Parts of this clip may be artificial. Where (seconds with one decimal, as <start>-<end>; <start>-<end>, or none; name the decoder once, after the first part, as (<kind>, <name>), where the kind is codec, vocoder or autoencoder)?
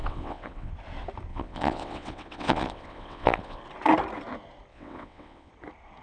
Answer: 0.0-0.7 (vocoder, WaveNeXt); 1.3-3.6; 4.7-5.5